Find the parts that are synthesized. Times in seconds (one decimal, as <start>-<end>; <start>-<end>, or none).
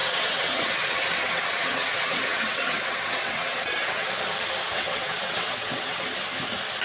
0.0-4.1; 4.7-6.0